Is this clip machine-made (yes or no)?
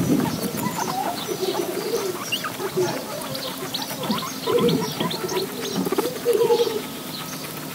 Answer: no